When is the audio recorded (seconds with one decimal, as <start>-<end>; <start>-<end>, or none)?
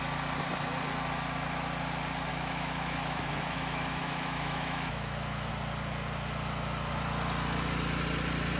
0.0-2.3; 5.5-8.6